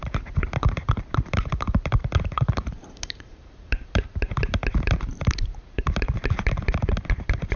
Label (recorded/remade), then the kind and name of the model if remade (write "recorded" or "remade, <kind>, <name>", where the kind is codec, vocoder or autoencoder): remade, vocoder, BigVGAN v2